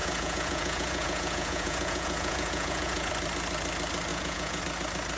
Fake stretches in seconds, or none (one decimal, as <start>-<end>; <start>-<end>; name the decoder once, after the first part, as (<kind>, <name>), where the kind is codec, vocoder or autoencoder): 0.0-3.1 (vocoder, Vocos); 4.1-4.6